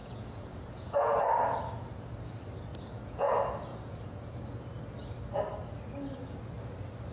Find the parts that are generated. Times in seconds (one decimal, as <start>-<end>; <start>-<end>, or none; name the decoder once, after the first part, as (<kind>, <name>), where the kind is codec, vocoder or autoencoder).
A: 0.0-1.2 (vocoder, Vocos); 2.7-3.3; 3.7-4.5